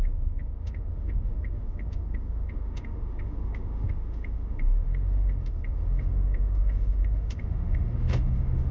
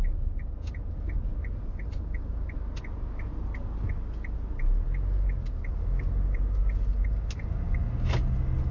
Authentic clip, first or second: second